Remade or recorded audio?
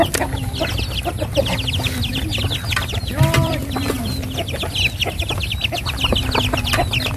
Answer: recorded